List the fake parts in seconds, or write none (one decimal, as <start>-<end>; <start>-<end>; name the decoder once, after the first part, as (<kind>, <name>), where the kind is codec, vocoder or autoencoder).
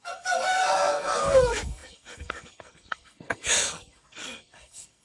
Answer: 0.0-5.0 (codec, SNAC)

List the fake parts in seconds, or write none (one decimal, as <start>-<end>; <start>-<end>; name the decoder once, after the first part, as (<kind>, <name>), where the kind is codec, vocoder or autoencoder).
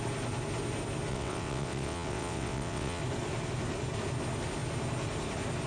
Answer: 1.1-3.0 (vocoder, WaveNeXt)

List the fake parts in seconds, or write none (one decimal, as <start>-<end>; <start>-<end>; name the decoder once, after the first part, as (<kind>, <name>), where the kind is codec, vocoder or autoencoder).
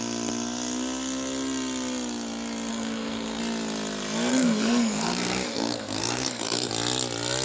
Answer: 2.7-3.4 (codec, SNAC); 4.3-6.7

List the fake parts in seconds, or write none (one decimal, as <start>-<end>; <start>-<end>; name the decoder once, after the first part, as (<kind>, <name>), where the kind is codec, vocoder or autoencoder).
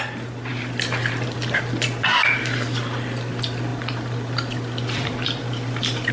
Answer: 3.7-6.1 (vocoder, BigVGAN v2)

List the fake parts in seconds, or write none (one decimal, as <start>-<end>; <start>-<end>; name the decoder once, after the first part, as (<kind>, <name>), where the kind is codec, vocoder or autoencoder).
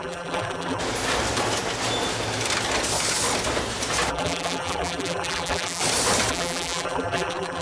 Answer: 0.0-0.8 (vocoder, BigVGAN v2); 4.1-5.8; 6.3-7.6